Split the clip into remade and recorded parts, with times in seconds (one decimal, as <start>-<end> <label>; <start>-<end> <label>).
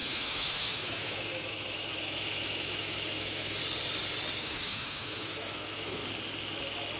0.0-3.6 remade; 3.6-4.4 recorded; 4.4-6.0 remade; 6.0-7.0 recorded